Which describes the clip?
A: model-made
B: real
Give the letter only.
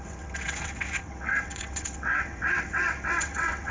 A